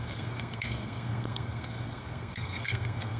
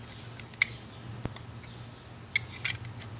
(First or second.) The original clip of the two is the second